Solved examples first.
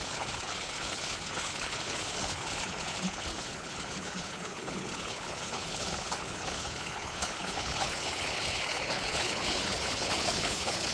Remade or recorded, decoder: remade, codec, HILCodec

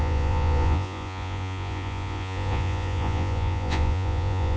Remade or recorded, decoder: remade, vocoder, Vocos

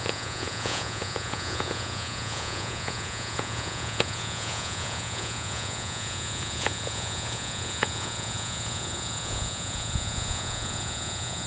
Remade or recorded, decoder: remade, vocoder, Vocos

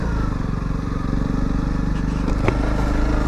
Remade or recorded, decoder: recorded